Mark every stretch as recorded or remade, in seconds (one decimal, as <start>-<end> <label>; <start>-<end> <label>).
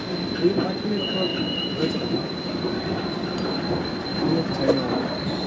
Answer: 0.0-1.3 recorded; 1.3-2.0 remade; 2.0-4.1 recorded; 4.1-4.7 remade; 4.7-5.5 recorded